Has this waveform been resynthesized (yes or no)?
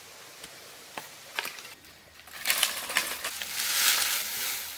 no